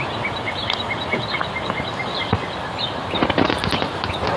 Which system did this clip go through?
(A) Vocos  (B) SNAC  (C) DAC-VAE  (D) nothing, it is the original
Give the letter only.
D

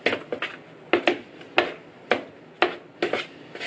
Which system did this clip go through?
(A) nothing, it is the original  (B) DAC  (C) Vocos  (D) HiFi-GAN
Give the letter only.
A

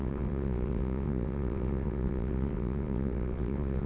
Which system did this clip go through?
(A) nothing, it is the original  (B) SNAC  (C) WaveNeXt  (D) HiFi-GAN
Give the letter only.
C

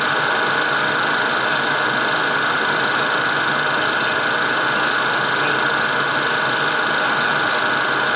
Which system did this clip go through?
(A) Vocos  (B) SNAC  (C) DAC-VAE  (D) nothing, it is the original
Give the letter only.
D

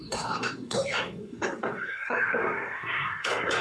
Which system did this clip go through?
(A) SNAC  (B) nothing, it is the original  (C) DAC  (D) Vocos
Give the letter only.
A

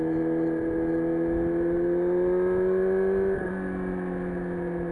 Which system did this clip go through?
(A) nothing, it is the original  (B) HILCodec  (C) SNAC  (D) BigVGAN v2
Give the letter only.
A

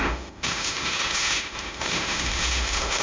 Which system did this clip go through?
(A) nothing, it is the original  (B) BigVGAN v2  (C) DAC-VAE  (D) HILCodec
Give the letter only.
C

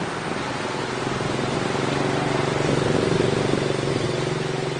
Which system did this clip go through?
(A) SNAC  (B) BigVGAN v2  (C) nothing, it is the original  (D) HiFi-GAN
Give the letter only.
C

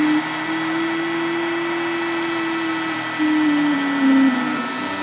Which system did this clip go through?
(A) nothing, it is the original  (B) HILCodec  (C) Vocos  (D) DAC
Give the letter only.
A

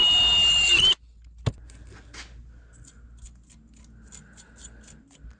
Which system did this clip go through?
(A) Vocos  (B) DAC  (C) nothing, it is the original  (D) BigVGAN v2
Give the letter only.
C